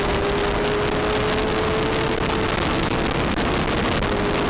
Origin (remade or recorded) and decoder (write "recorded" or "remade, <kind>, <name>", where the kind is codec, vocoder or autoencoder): recorded